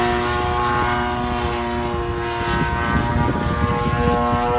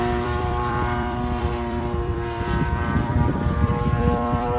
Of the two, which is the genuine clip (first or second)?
first